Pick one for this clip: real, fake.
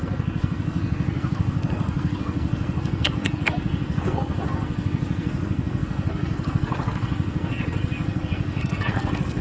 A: fake